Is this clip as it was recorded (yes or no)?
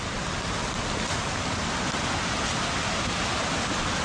yes